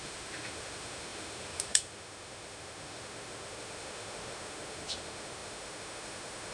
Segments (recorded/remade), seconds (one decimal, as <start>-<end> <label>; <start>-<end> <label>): 0.0-6.5 remade